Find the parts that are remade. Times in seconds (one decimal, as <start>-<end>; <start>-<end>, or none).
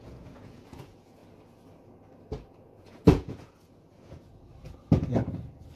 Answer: 0.0-1.2; 2.5-4.5